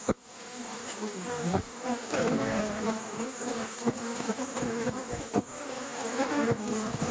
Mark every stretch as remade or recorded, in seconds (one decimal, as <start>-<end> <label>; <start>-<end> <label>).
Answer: 0.0-7.1 remade